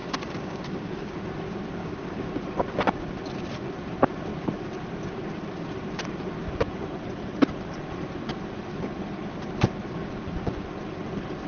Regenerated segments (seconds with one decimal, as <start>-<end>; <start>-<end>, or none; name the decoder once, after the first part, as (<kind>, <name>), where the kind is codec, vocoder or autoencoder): 0.0-1.2 (codec, DAC); 1.8-2.3